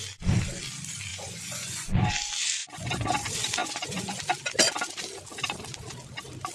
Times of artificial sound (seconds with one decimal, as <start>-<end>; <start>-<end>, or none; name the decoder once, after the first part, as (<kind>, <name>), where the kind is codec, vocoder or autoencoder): 1.1-2.1 (vocoder, Vocos); 2.6-3.2; 3.6-4.2